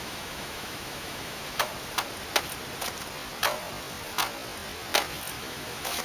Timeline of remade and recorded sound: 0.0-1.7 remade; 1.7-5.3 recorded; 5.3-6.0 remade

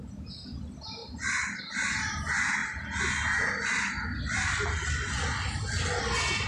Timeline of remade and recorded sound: 0.0-6.5 recorded

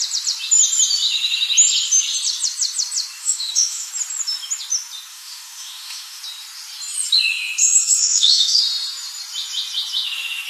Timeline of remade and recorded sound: 0.0-3.2 recorded; 3.2-3.9 remade; 3.9-5.1 recorded; 5.1-6.2 remade; 6.2-7.6 recorded; 7.6-8.6 remade; 8.6-10.5 recorded

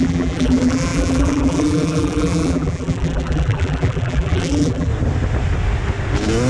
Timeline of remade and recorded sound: 0.0-4.9 remade; 4.9-6.5 recorded

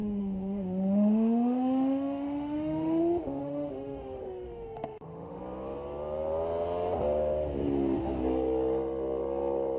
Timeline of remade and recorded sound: 0.0-3.0 remade; 3.0-3.4 recorded; 3.4-5.4 remade; 5.4-9.8 recorded

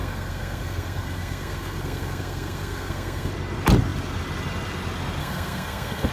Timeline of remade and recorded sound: 0.0-3.3 remade; 3.3-5.2 recorded; 5.2-6.1 remade